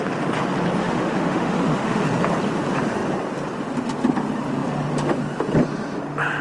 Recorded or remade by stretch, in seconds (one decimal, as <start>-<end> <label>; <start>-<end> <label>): 0.0-0.8 recorded; 0.8-2.0 remade; 2.0-6.4 recorded